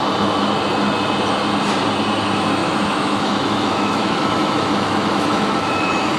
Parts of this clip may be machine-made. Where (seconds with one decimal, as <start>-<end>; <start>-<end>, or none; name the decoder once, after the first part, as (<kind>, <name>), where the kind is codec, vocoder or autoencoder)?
2.6-6.2 (autoencoder, DAC-VAE)